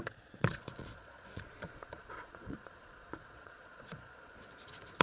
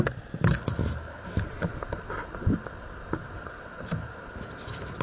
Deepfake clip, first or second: first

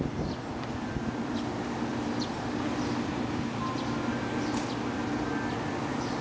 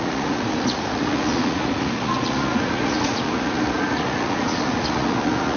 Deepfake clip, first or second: second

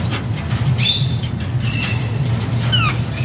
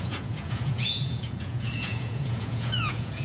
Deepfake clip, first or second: second